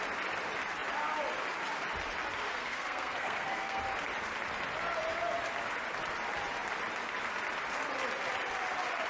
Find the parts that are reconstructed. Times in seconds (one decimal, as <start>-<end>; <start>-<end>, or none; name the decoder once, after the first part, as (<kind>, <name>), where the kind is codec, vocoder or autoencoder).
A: 2.5-3.8 (codec, SNAC)